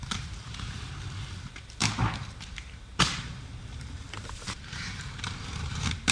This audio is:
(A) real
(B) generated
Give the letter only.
B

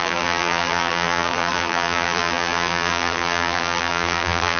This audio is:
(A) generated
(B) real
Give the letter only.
A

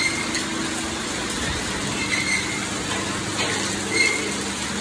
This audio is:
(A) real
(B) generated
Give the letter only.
A